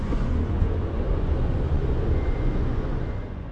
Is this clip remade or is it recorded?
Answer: remade